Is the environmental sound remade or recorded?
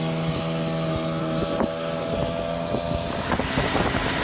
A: recorded